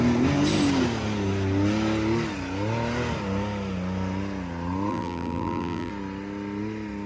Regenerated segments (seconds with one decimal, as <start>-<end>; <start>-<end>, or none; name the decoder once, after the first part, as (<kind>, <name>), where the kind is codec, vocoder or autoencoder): 4.9-5.9 (vocoder, BigVGAN v2)